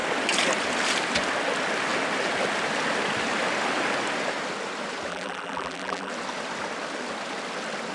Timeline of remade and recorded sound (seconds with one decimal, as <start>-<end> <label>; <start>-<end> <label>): 0.0-5.1 recorded; 5.1-6.1 remade; 6.1-7.9 recorded